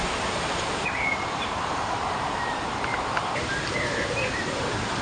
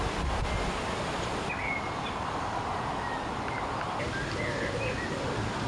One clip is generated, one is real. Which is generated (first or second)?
first